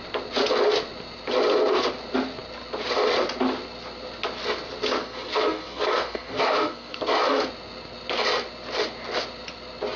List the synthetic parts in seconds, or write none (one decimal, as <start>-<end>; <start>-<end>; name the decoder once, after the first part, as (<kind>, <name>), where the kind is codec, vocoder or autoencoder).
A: 5.0-7.0 (codec, SNAC)